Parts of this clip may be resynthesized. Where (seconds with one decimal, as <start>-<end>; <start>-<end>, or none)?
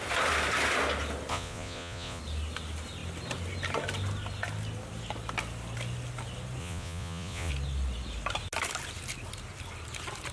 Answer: 1.3-2.2; 6.6-7.5